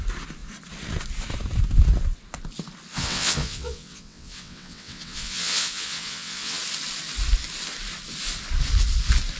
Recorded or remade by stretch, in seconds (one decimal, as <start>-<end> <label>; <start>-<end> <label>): 0.0-2.9 recorded; 2.9-6.6 remade; 6.6-9.4 recorded